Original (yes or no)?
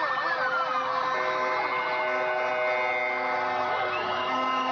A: yes